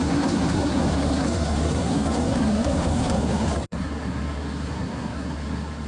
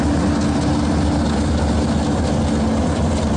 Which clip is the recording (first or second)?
second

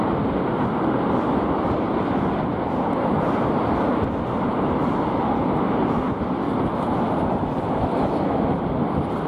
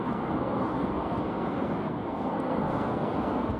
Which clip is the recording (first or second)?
first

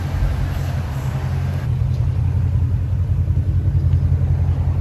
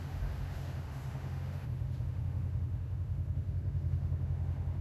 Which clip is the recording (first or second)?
first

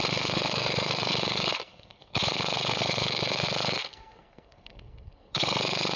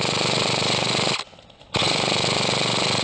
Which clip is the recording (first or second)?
second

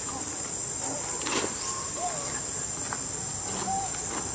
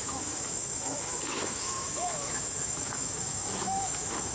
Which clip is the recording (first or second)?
first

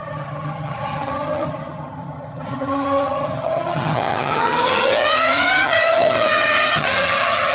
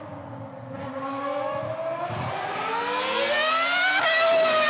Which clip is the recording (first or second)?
second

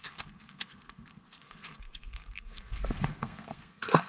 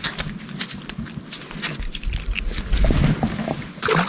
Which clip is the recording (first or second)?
second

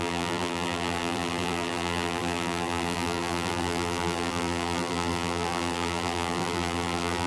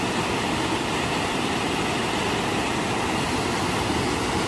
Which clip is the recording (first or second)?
second